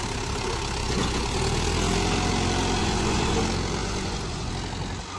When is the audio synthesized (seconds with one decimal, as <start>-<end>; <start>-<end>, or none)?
0.8-1.4; 2.8-3.4; 3.8-4.5